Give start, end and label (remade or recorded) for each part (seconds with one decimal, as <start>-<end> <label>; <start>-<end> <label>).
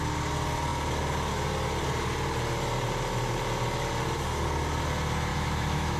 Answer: 0.0-5.3 recorded; 5.3-6.0 remade